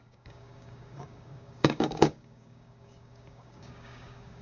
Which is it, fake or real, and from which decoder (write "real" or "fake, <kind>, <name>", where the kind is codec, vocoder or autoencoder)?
fake, codec, DAC